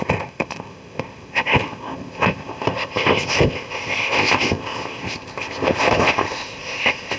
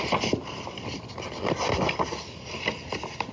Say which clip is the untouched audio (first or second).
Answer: second